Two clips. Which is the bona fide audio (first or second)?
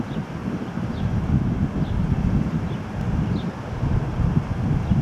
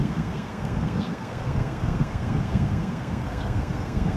first